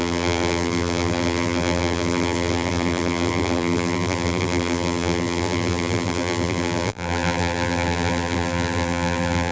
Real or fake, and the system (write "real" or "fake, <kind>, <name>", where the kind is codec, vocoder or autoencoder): fake, vocoder, BigVGAN v2